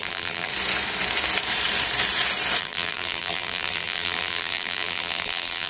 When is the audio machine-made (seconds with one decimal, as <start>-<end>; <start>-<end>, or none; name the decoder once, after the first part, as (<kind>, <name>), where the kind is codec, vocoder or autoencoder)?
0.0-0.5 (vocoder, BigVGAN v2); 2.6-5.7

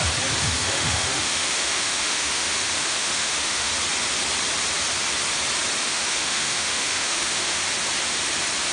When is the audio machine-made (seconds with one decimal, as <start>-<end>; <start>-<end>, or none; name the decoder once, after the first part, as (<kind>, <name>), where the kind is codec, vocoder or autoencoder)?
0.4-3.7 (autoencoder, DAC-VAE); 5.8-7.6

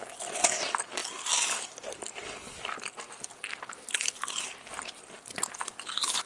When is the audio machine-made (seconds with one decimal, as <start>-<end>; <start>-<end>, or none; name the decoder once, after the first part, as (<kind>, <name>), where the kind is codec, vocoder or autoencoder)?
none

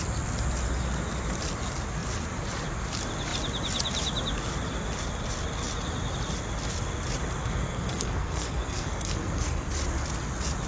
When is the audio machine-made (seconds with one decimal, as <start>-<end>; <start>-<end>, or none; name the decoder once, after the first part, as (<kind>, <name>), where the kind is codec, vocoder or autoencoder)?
7.4-9.7 (codec, SNAC)